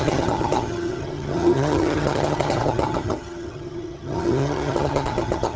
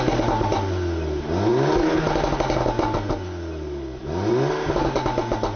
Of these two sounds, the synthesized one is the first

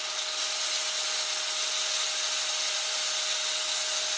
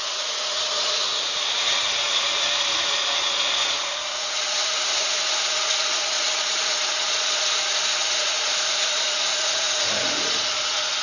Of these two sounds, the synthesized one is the second